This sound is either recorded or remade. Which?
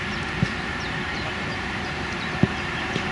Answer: remade